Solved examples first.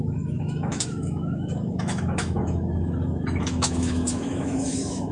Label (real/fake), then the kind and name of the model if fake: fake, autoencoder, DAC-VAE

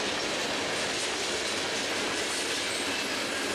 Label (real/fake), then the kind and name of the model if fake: real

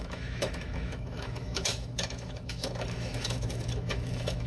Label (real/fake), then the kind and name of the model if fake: fake, autoencoder, DAC-VAE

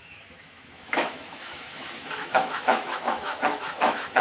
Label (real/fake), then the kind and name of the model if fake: fake, autoencoder, DAC-VAE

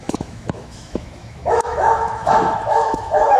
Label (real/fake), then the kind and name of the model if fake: fake, autoencoder, DAC-VAE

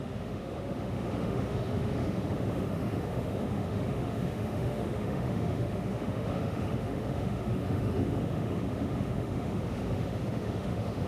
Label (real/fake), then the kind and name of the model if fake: fake, autoencoder, DAC-VAE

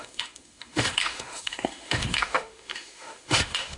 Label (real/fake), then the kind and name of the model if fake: fake, autoencoder, DAC-VAE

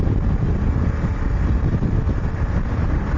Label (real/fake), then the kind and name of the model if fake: real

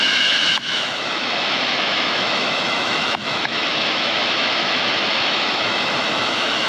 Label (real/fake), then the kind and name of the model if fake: fake, autoencoder, DAC-VAE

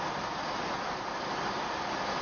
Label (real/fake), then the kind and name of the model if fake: real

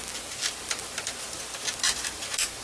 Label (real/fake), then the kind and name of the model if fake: real